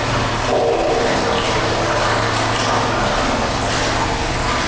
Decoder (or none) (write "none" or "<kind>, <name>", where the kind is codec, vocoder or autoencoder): none